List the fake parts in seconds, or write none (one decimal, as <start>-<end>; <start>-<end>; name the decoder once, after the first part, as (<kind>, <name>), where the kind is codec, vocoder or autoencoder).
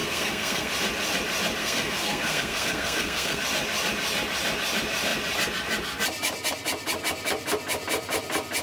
0.0-0.7 (codec, SNAC); 1.6-3.4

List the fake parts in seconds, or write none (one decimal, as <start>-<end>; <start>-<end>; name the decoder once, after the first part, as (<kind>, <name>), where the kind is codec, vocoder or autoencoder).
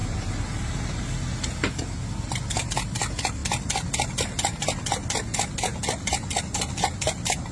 none